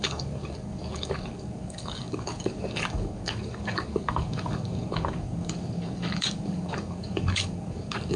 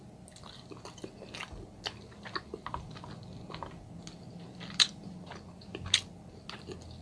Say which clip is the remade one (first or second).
first